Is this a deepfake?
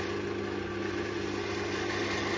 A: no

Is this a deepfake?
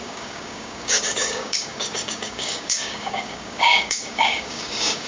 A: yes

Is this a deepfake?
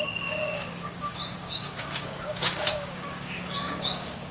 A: yes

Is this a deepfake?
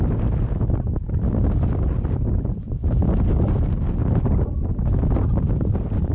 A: no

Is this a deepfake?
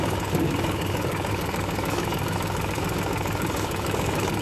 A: yes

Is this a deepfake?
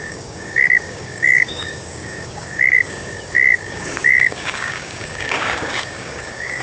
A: yes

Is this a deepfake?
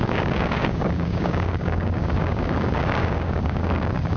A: yes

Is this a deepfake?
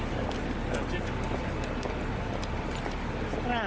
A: no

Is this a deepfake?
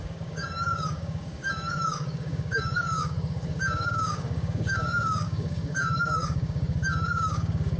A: yes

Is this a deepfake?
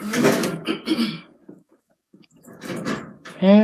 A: yes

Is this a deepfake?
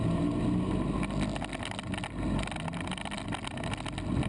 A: no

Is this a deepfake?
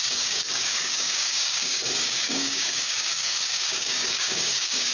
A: yes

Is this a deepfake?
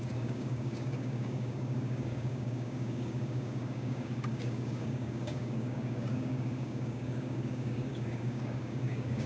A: yes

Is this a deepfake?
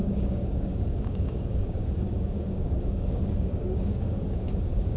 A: yes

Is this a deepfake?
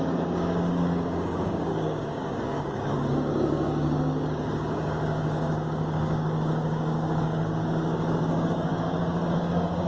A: yes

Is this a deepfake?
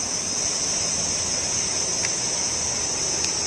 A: no